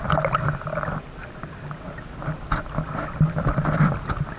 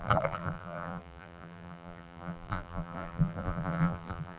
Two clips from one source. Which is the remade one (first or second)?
second